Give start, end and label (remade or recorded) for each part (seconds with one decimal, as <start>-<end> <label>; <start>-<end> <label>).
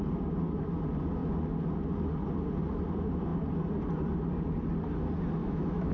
0.0-5.4 recorded; 5.4-5.9 remade